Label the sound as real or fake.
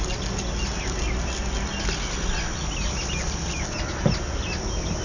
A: real